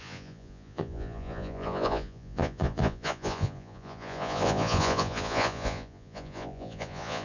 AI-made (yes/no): yes